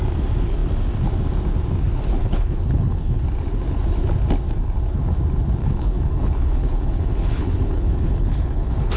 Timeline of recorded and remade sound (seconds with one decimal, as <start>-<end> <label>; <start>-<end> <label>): 0.0-2.2 recorded; 2.2-3.2 remade; 3.2-5.6 recorded; 5.6-9.0 remade